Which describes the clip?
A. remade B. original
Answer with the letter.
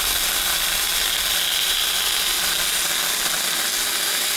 B